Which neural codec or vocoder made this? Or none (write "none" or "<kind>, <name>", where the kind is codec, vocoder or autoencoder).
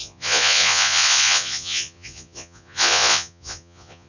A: vocoder, Vocos